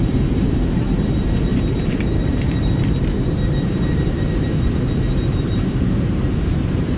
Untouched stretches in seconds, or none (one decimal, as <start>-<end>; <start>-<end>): none